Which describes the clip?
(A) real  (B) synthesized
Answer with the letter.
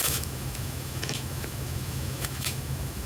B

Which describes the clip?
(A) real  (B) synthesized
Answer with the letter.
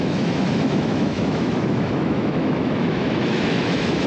B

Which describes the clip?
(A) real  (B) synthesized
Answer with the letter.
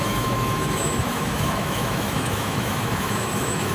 B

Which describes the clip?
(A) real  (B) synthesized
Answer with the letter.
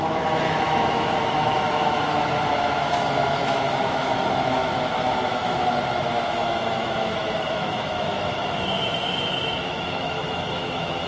B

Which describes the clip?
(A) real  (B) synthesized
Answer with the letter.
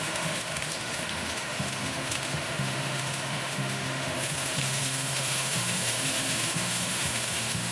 B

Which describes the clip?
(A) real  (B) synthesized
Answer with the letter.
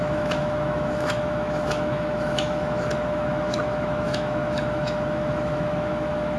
B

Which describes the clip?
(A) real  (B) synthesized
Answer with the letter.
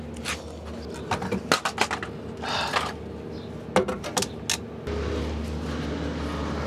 A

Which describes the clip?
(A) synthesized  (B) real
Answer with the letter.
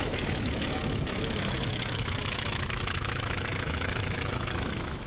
A